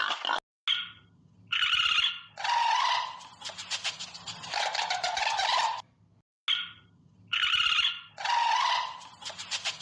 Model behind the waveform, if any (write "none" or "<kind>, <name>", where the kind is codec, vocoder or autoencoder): none